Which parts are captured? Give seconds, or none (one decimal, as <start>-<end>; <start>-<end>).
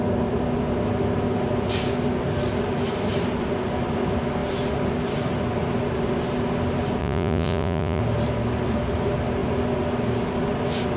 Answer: 0.0-7.0; 8.0-11.0